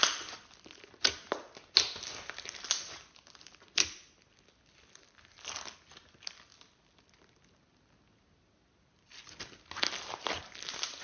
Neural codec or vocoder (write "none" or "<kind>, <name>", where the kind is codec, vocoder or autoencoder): none